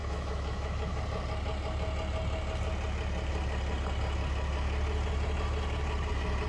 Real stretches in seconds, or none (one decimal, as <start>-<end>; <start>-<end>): 1.0-6.5